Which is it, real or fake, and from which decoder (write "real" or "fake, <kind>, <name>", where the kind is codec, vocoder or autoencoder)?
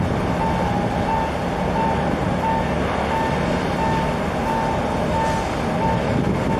real